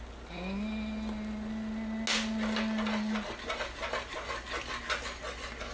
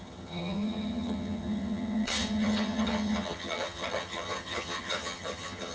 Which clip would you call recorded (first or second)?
first